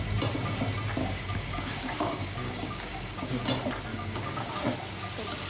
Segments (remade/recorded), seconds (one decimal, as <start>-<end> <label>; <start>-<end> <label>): 0.0-1.0 recorded; 1.0-3.4 remade; 3.4-3.9 recorded; 3.9-4.5 remade; 4.5-5.5 recorded